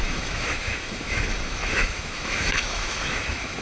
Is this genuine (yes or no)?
no